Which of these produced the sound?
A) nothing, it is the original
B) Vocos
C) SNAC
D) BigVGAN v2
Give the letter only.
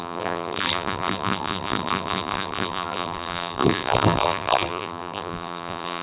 D